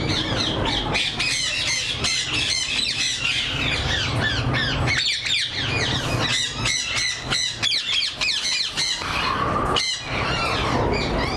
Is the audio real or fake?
real